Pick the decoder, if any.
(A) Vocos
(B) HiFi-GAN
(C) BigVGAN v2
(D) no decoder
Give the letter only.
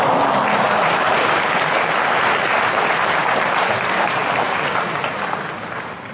D